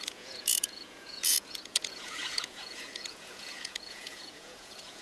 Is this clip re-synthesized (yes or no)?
yes